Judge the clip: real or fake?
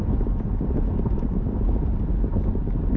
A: real